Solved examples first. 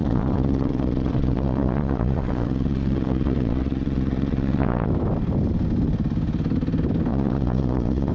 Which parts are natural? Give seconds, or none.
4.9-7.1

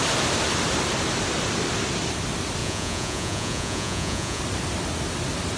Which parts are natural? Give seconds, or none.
0.0-2.6; 4.4-5.6

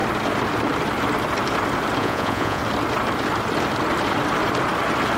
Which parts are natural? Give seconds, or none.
0.0-2.0; 2.6-5.2

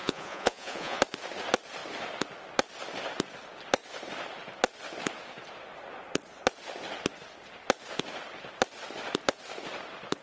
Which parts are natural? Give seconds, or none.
1.0-10.2

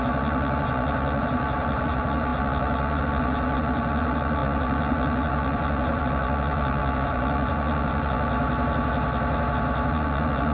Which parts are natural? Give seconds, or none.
8.3-9.9

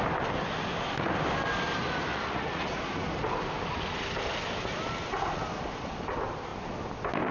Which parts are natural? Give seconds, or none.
0.0-2.1; 2.8-7.3